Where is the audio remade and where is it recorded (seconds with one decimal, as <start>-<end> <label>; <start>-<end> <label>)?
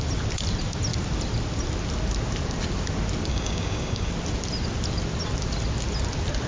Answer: 0.0-3.3 recorded; 3.3-4.1 remade; 4.1-6.5 recorded